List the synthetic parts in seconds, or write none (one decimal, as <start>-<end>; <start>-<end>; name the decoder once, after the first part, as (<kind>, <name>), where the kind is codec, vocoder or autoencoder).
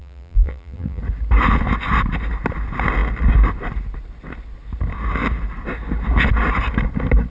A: 0.0-1.0 (vocoder, BigVGAN v2)